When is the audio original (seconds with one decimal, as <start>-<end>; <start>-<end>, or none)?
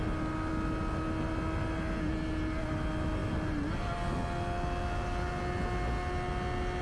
0.0-6.8